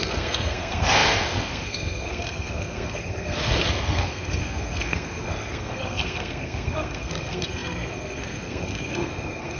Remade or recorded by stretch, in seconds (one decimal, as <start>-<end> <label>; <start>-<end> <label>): 0.0-9.6 remade